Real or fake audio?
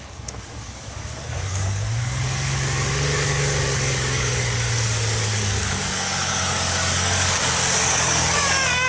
fake